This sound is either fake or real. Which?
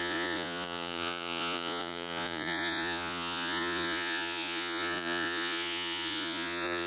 fake